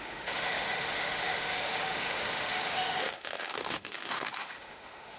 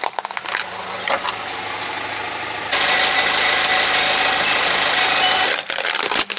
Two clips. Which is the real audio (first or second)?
second